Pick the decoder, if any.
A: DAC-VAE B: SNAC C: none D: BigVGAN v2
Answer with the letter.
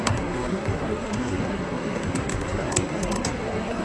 B